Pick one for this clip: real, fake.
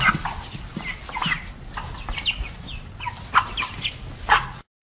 real